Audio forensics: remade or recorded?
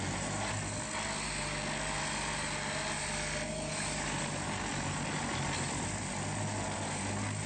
recorded